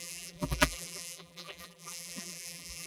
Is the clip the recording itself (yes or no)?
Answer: no